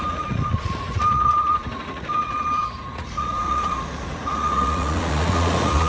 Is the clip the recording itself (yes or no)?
no